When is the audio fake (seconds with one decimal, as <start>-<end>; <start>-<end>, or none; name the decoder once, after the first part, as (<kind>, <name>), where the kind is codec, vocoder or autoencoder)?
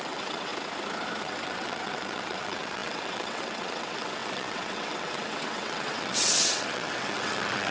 0.0-0.5 (vocoder, WaveNeXt); 1.2-7.7